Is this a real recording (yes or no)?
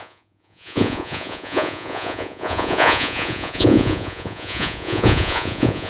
no